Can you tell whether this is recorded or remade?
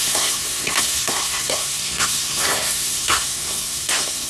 remade